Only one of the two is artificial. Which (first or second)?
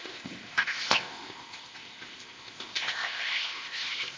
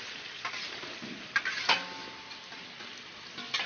first